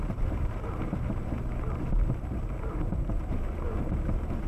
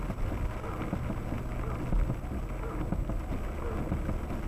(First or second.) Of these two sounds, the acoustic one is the second